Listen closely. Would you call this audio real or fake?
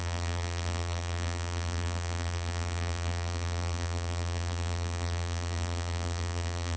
fake